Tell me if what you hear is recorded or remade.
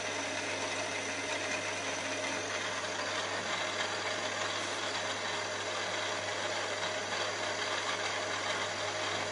recorded